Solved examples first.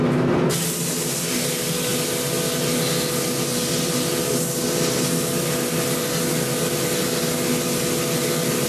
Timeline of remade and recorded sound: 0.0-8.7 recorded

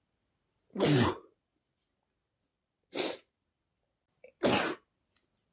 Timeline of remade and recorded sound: 0.0-2.5 recorded; 2.5-3.3 remade; 3.3-5.5 recorded

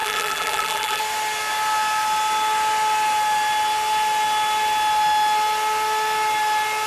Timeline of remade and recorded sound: 0.0-1.0 remade; 1.0-6.9 recorded